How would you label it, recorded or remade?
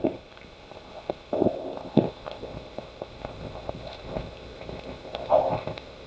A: remade